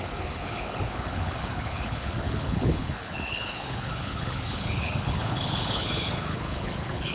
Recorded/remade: remade